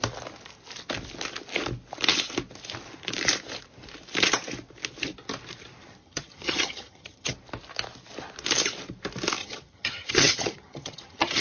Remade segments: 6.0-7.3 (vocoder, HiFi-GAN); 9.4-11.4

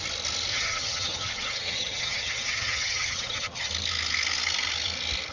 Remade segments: 0.5-3.7 (vocoder, HiFi-GAN)

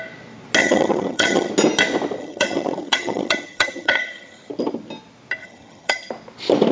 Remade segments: 0.6-1.5 (vocoder, HiFi-GAN); 2.2-4.5; 5.4-6.1

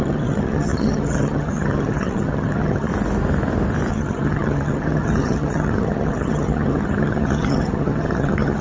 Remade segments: 0.0-2.9 (vocoder, HiFi-GAN); 3.9-8.6

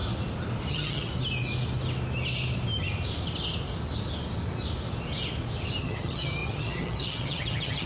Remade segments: 0.7-1.1 (vocoder, HiFi-GAN); 5.8-7.9

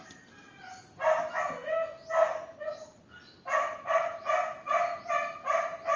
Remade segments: none

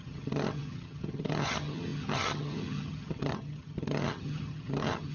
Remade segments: 0.0-5.1 (vocoder, HiFi-GAN)

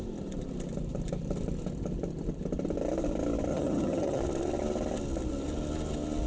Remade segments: 3.5-4.2 (vocoder, HiFi-GAN)